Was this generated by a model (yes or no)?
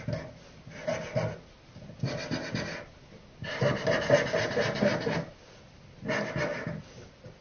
no